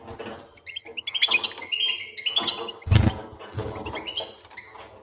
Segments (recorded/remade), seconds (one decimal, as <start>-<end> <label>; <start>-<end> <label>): 0.0-5.0 recorded